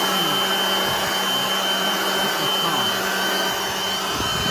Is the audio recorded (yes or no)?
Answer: yes